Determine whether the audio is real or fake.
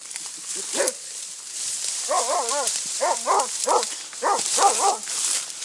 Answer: real